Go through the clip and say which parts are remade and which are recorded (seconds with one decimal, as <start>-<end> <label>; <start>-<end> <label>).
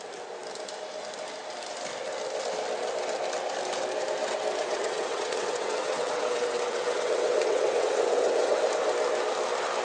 0.0-4.6 recorded; 4.6-8.6 remade; 8.6-9.8 recorded